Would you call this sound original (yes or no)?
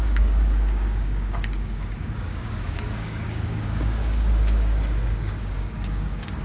no